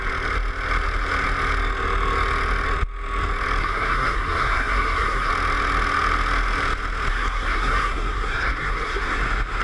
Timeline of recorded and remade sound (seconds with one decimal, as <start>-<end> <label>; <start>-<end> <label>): 0.0-3.6 recorded; 3.6-5.3 remade; 5.3-7.1 recorded; 7.1-9.2 remade; 9.2-9.6 recorded